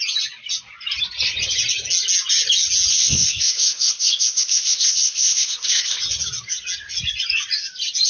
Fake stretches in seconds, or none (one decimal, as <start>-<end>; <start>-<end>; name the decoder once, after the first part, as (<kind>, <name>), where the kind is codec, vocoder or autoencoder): 2.9-6.0 (codec, ZipCodec)